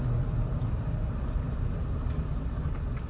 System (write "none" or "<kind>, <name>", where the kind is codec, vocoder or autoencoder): none